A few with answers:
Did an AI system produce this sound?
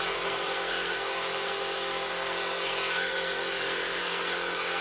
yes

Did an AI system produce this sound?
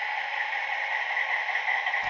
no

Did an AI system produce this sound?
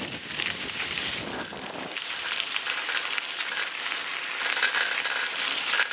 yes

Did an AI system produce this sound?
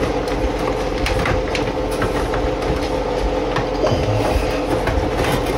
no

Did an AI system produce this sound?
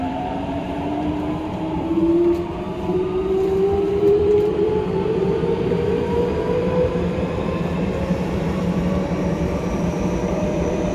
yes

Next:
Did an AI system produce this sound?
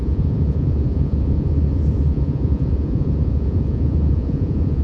yes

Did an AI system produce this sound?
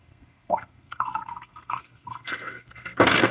yes